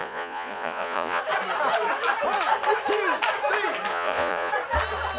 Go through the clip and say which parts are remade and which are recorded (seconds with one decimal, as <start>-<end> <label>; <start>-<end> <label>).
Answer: 0.0-1.2 remade; 1.2-3.9 recorded; 3.9-4.5 remade; 4.5-5.2 recorded

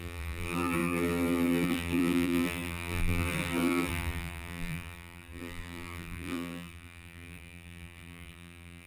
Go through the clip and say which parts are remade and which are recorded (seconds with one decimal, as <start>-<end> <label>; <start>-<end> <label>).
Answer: 0.0-8.9 remade

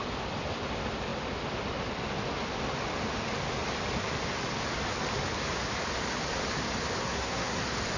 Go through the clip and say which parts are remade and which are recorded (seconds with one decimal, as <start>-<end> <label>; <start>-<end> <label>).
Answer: 0.0-7.0 recorded; 7.0-7.6 remade; 7.6-8.0 recorded

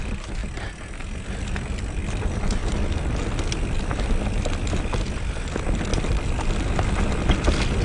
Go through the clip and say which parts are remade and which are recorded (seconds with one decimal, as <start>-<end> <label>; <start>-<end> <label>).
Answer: 0.0-7.8 recorded

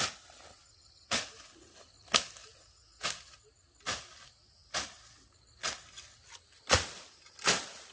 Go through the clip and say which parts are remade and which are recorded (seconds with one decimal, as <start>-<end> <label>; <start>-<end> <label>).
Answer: 0.0-7.9 recorded

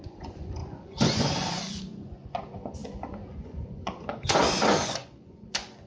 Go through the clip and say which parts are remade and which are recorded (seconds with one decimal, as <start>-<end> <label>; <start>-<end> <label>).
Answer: 0.0-5.9 remade